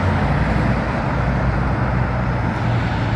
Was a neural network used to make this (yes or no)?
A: no